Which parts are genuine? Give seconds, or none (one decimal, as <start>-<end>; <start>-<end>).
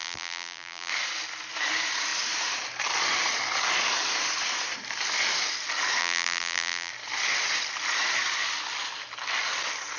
0.9-6.0; 6.9-10.0